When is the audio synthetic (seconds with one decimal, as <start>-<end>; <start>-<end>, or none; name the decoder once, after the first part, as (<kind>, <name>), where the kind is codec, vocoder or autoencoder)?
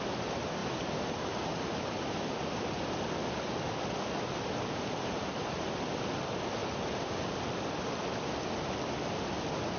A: 0.6-2.7 (vocoder, BigVGAN v2)